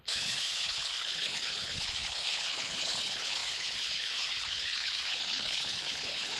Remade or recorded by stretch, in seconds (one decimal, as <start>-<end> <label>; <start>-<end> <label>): 0.0-6.4 remade